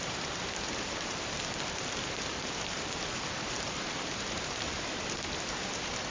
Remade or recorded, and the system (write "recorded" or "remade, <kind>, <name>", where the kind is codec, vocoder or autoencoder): remade, vocoder, BigVGAN v2